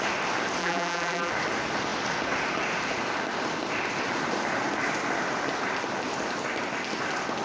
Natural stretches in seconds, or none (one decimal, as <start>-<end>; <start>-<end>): 0.0-0.6; 1.3-7.4